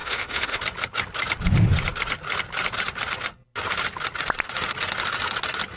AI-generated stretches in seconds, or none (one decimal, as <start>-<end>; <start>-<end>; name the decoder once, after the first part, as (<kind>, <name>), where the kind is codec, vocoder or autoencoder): 0.0-0.6 (autoencoder, DAC-VAE)